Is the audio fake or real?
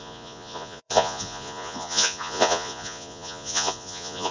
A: fake